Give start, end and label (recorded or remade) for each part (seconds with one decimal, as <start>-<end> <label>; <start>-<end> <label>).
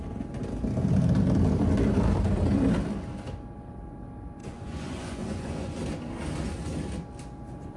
0.0-4.4 recorded; 4.4-5.7 remade; 5.7-7.8 recorded